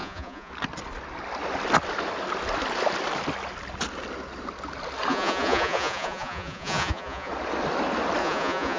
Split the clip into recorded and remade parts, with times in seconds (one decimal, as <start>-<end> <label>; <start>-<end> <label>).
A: 0.0-0.5 remade; 0.5-5.1 recorded; 5.1-7.3 remade; 7.3-8.2 recorded; 8.2-8.8 remade